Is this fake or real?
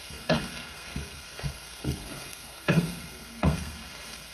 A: fake